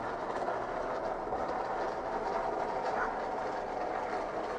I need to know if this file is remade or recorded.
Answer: recorded